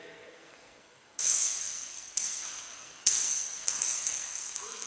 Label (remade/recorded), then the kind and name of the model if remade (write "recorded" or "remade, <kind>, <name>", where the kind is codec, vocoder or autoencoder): remade, codec, SNAC